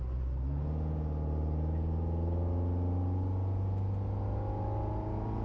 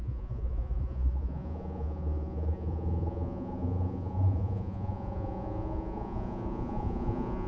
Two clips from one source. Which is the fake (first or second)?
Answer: second